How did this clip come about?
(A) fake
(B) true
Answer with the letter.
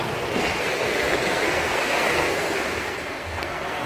A